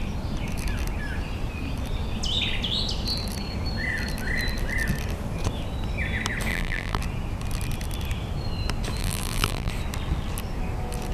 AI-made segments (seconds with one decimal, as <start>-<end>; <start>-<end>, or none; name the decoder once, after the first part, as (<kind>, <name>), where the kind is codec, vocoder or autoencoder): 6.5-7.0 (vocoder, BigVGAN v2); 9.0-9.7